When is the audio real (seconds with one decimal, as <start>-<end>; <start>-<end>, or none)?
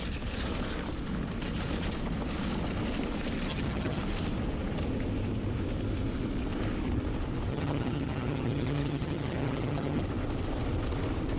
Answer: 0.0-3.5; 4.0-7.5; 10.0-11.4